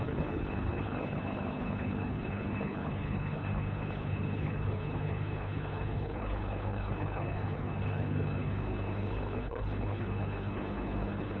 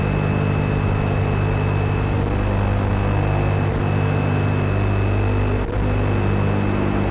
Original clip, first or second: second